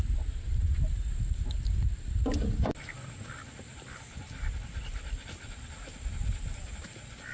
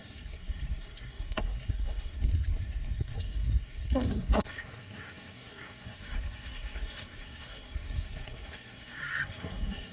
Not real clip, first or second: second